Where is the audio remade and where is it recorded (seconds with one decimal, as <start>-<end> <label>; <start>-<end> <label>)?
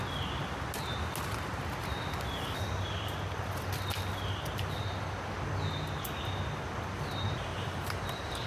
0.0-7.5 recorded; 7.5-8.5 remade